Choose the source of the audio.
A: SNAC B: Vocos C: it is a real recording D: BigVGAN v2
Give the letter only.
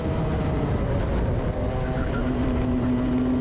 C